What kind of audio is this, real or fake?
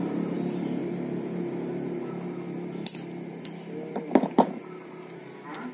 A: real